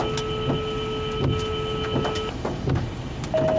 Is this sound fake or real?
real